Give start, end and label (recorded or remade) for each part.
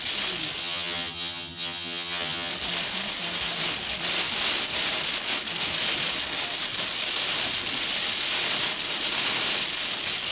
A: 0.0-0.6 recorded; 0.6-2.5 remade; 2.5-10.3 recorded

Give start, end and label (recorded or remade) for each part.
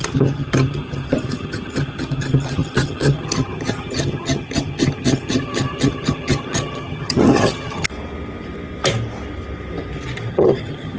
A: 0.0-7.9 remade; 7.9-10.3 recorded; 10.3-11.0 remade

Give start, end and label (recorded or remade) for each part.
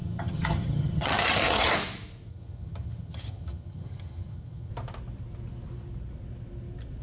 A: 0.0-1.7 remade; 1.7-2.3 recorded; 2.3-4.7 remade; 4.7-7.0 recorded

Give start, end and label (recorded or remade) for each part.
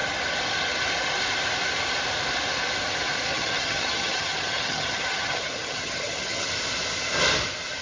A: 0.0-3.3 recorded; 3.3-6.5 remade; 6.5-7.8 recorded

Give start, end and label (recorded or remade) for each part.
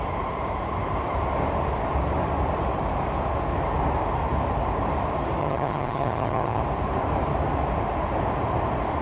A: 0.0-5.4 recorded; 5.4-6.6 remade; 6.6-9.0 recorded